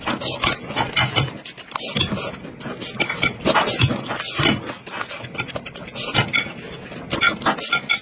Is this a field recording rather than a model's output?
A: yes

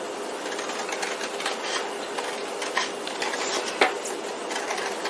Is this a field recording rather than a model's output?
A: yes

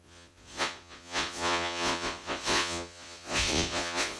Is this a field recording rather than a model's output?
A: no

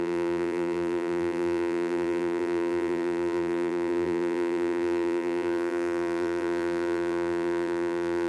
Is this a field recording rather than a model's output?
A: no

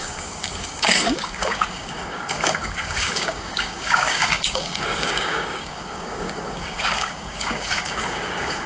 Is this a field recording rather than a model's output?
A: no